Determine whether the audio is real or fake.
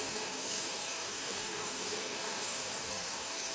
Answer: fake